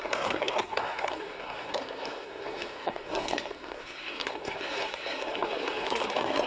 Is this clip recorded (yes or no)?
no